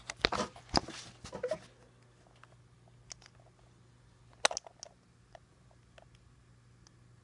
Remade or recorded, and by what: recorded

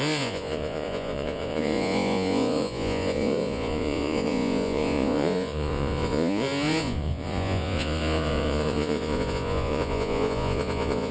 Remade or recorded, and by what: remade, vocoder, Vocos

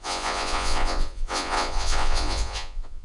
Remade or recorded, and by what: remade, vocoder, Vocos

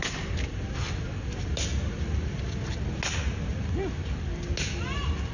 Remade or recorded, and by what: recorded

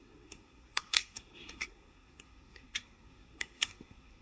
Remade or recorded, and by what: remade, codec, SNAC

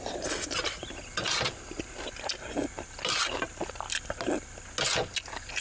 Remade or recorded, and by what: recorded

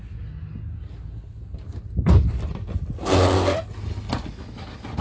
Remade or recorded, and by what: recorded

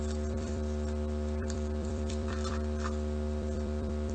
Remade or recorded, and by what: remade, vocoder, BigVGAN v2